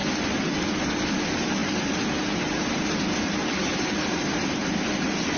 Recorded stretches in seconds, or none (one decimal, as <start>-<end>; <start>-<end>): 0.0-5.4